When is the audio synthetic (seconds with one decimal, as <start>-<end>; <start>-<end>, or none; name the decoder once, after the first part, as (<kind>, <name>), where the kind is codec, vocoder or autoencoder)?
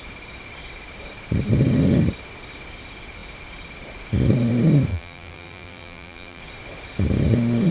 4.9-6.4 (vocoder, BigVGAN v2)